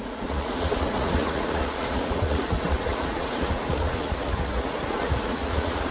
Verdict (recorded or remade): remade